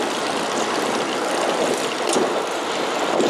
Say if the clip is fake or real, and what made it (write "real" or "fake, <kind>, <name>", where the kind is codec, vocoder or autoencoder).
real